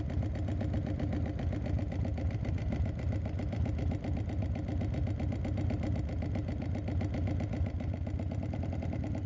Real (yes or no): yes